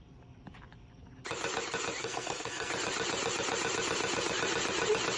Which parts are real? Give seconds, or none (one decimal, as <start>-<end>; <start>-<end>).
0.0-2.0; 2.7-5.2